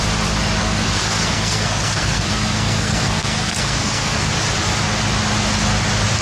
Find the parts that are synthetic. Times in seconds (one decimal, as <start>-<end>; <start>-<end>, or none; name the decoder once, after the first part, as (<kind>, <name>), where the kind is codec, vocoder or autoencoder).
0.6-4.3 (codec, SNAC)